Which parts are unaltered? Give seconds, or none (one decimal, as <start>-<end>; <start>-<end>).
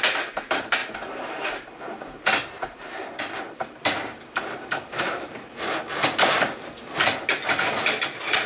0.0-0.8; 5.8-8.5